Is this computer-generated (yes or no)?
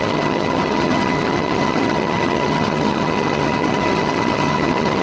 yes